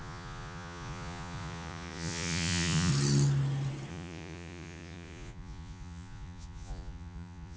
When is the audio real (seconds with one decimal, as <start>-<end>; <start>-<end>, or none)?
2.9-3.9